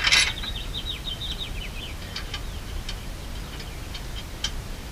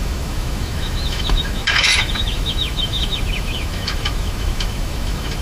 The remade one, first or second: second